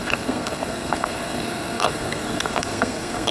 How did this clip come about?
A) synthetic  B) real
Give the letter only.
A